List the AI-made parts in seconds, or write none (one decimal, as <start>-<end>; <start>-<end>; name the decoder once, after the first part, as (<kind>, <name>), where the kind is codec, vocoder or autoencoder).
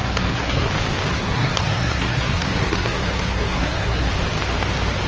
0.0-0.7 (codec, SNAC); 1.1-4.1